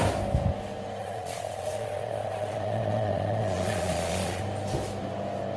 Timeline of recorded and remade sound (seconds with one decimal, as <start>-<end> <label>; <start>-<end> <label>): 0.0-1.0 recorded; 1.0-4.4 remade; 4.4-5.6 recorded